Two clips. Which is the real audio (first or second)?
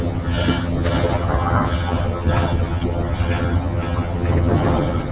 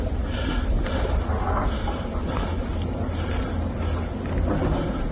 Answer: second